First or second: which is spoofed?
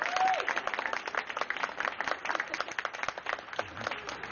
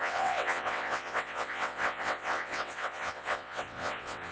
second